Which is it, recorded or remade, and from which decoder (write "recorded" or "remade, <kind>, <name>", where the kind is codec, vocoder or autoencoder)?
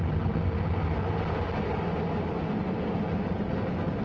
recorded